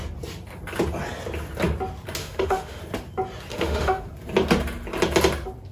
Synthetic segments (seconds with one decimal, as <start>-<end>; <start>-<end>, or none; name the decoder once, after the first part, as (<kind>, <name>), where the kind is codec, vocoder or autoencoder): 2.2-2.8 (autoencoder, DAC-VAE); 3.5-4.1